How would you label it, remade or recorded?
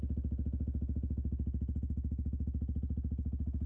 recorded